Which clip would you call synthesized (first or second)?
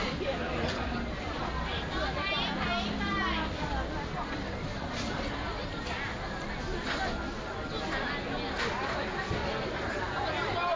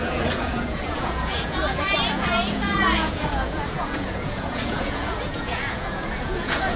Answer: second